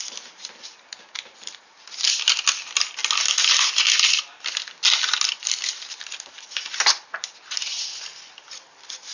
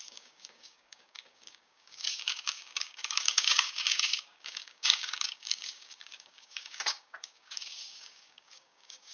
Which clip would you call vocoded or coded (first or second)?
second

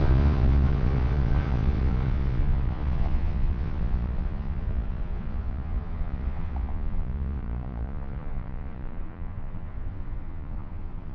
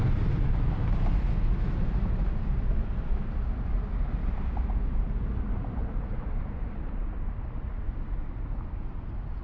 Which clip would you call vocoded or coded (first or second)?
first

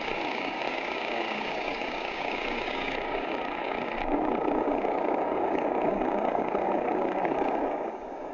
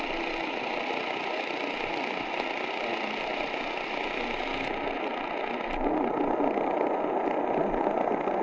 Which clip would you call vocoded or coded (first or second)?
first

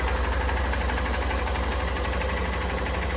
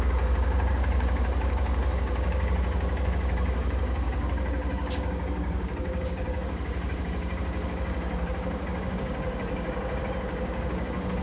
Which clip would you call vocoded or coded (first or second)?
second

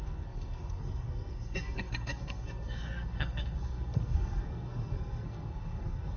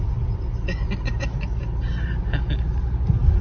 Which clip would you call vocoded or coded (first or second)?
first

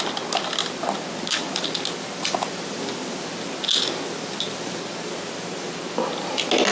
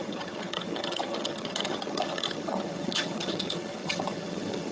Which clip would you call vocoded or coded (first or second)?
second